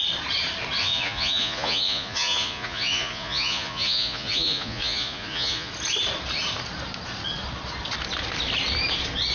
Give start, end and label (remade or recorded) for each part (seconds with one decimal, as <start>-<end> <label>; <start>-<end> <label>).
0.0-0.8 recorded; 0.8-5.7 remade; 5.7-9.3 recorded